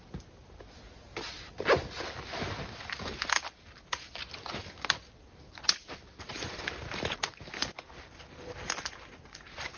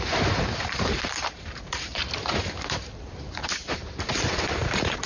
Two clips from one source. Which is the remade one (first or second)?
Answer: second